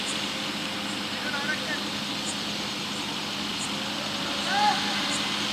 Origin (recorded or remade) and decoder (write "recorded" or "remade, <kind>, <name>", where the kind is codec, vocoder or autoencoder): recorded